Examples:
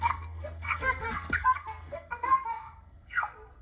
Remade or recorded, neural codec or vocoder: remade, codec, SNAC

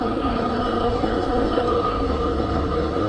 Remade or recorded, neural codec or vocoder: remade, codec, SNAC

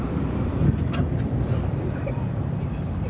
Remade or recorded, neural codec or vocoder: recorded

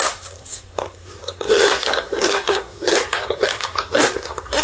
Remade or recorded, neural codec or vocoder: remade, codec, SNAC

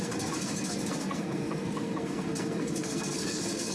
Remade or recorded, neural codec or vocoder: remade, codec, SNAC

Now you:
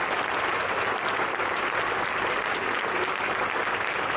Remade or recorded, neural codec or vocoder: recorded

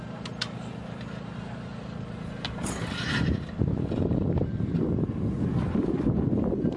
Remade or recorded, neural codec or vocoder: recorded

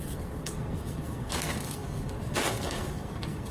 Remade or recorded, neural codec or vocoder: remade, codec, SNAC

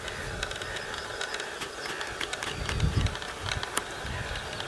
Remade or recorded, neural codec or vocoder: recorded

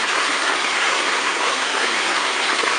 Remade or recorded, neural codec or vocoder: remade, codec, SNAC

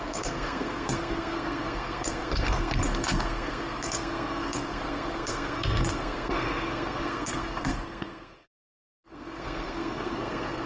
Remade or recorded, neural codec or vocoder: remade, codec, SNAC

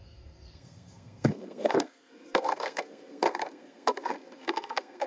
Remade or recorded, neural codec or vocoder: remade, codec, SNAC